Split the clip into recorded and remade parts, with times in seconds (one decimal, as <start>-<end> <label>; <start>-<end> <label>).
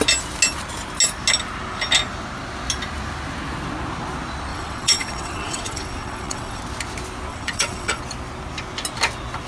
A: 0.0-4.5 recorded; 4.5-6.6 remade; 6.6-7.3 recorded; 7.3-8.0 remade; 8.0-9.5 recorded